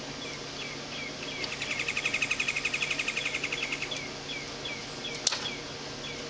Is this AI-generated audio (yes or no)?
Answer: no